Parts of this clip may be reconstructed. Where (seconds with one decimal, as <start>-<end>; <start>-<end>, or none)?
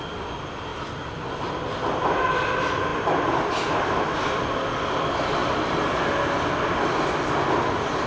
none